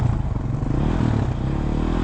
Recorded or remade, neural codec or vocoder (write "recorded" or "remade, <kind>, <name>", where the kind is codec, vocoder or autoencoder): recorded